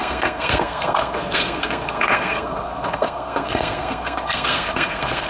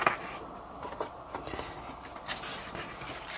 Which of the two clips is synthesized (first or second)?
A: first